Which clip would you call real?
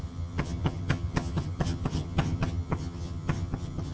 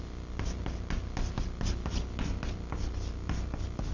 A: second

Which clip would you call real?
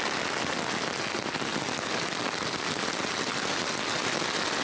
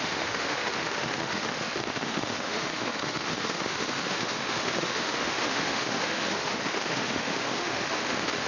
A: first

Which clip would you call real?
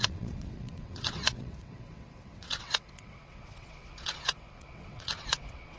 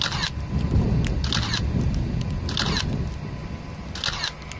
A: second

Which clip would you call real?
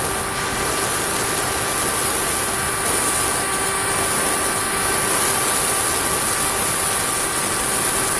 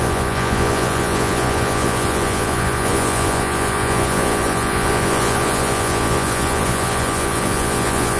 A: first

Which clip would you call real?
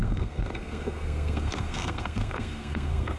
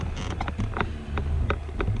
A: second